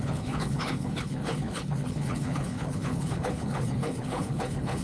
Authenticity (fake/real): fake